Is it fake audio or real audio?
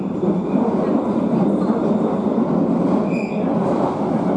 real